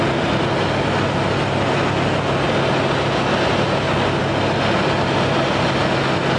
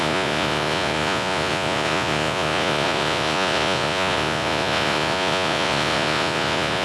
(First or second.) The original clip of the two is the first